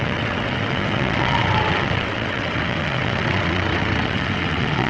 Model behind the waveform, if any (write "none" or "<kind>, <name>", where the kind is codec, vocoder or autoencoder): vocoder, WaveNeXt